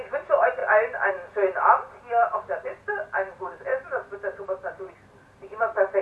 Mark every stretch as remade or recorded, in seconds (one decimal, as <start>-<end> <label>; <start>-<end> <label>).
0.0-6.0 recorded

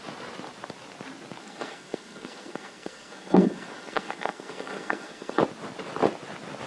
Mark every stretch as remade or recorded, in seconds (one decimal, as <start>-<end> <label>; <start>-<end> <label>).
0.0-1.4 recorded; 1.4-5.4 remade; 5.4-6.7 recorded

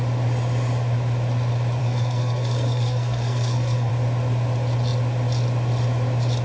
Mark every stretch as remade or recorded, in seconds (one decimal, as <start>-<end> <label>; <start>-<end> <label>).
0.0-1.8 recorded; 1.8-3.9 remade; 3.9-6.4 recorded